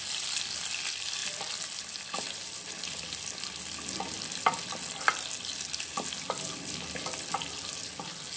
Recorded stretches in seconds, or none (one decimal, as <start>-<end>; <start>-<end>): 0.0-8.4